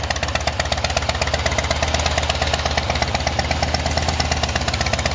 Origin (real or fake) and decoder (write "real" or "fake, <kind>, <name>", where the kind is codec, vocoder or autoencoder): real